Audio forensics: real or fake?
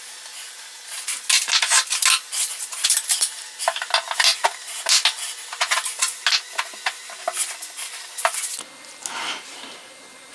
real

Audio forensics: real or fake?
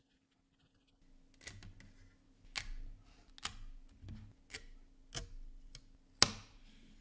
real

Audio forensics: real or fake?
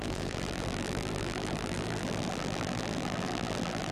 fake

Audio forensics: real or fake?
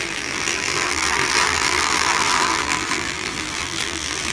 fake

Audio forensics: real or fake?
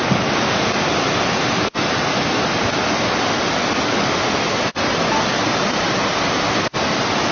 real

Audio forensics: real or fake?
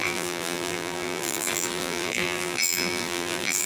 fake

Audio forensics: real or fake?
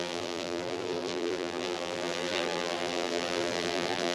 fake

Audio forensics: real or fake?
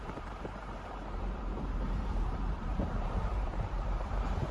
fake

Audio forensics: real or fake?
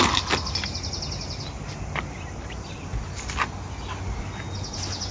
real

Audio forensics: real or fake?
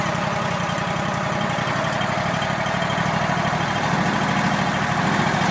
real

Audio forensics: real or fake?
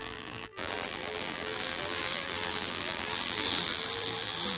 fake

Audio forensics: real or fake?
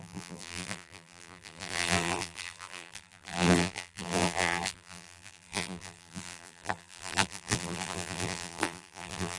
fake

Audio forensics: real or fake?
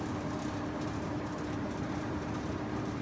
fake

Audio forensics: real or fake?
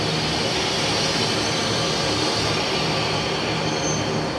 fake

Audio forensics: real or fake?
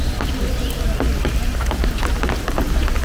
real